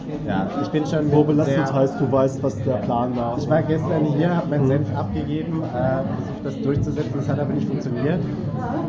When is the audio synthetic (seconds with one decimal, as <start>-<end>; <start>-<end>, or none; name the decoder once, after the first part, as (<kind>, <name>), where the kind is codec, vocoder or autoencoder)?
none